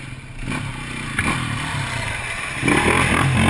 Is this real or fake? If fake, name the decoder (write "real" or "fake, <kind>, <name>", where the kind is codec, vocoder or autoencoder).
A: real